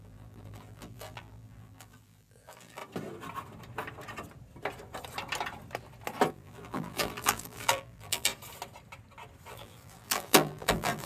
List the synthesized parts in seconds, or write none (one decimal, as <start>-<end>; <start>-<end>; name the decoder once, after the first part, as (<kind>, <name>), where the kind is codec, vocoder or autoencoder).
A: 0.0-2.8 (vocoder, BigVGAN v2); 6.3-8.3; 9.5-11.1